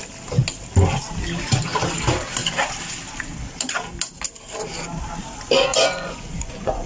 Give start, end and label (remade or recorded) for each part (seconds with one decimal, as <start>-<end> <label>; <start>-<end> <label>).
0.0-5.7 recorded; 5.7-6.9 remade